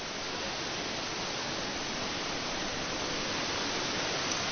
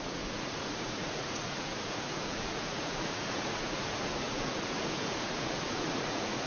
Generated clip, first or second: second